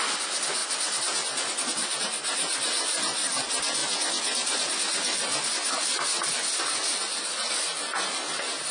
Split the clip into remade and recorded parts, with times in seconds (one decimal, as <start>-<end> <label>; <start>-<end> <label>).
0.0-8.7 recorded